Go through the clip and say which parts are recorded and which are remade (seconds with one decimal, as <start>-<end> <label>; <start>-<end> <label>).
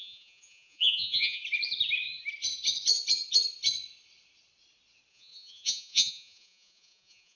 0.0-1.4 remade; 1.4-5.1 recorded; 5.1-7.4 remade